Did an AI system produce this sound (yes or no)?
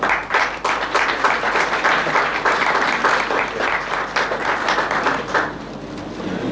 no